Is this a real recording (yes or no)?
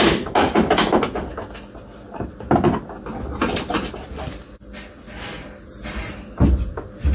yes